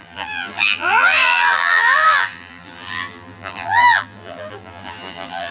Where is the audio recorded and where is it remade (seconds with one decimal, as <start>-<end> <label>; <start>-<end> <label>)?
0.0-5.5 remade